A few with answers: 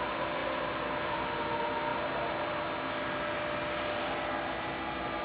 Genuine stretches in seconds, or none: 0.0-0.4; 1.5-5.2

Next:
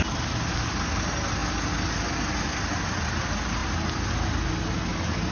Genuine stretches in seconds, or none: 0.0-5.3

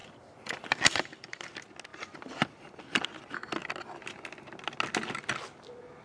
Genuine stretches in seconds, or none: 1.5-1.9; 3.0-6.0

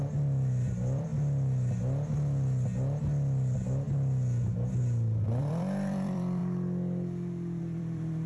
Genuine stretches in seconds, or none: 1.1-5.4; 6.4-7.6